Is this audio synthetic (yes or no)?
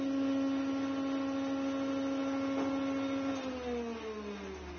no